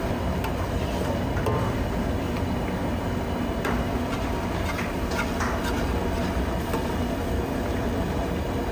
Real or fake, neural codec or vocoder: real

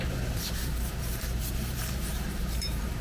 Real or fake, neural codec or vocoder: fake, vocoder, BigVGAN v2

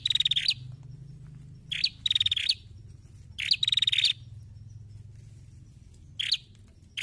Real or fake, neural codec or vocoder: real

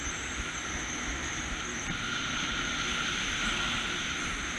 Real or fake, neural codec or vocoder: real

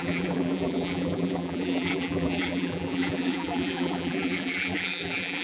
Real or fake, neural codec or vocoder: fake, vocoder, BigVGAN v2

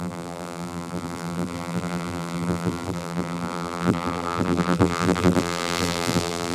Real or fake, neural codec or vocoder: fake, vocoder, BigVGAN v2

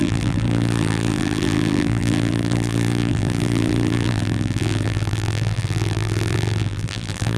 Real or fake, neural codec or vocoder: fake, vocoder, BigVGAN v2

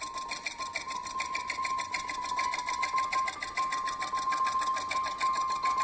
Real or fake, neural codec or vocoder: real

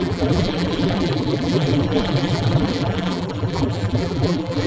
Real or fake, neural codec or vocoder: fake, vocoder, BigVGAN v2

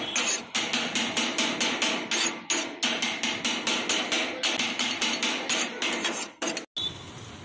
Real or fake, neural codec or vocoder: real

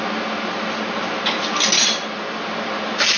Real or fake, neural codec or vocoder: real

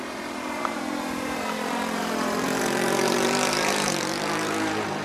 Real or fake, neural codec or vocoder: fake, vocoder, BigVGAN v2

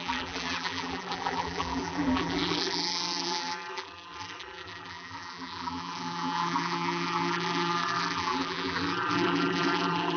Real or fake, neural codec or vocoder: fake, vocoder, BigVGAN v2